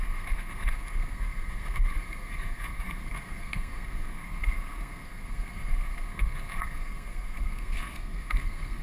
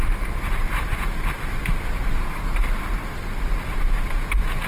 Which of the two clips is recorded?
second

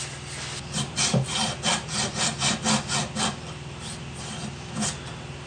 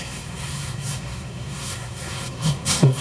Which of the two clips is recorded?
first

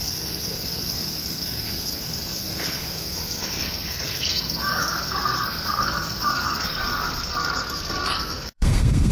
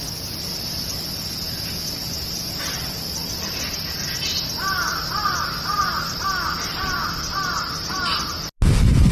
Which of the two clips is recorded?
second